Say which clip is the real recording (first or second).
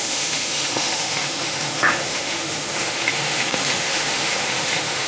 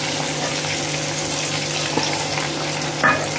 second